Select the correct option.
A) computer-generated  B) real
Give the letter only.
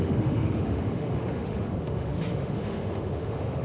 A